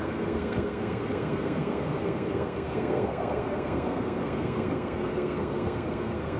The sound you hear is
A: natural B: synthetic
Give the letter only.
B